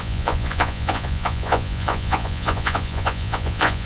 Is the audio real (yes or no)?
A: no